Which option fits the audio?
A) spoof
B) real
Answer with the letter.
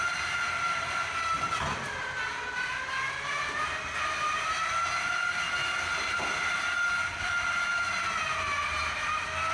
B